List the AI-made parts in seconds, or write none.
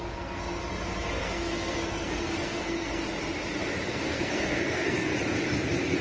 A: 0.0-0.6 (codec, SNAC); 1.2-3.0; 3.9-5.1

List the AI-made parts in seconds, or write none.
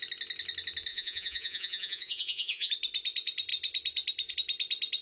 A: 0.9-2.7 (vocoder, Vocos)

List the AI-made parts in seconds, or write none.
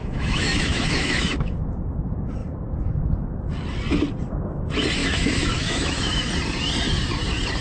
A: 0.0-1.5 (autoencoder, DAC-VAE); 5.0-6.3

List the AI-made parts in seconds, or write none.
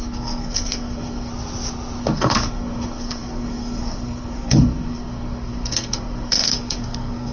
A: 0.0-1.3 (codec, SNAC); 2.0-7.3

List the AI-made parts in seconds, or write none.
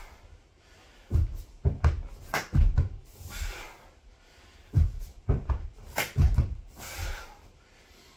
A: 0.0-1.6 (vocoder, BigVGAN v2); 2.2-8.2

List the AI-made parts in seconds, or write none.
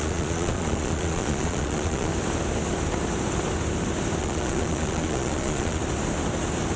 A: 0.0-2.1 (vocoder, Vocos); 4.2-5.8